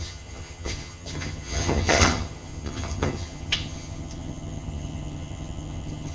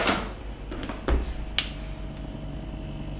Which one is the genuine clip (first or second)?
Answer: second